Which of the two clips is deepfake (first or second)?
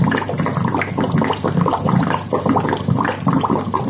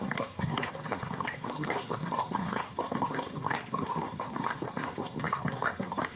second